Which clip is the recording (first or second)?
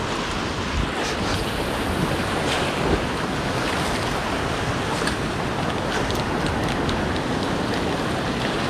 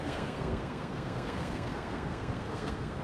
first